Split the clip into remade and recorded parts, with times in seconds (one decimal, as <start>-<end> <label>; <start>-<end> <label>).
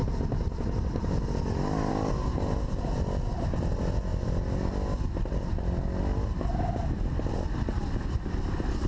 0.0-8.9 recorded